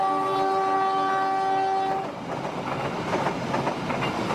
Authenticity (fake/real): real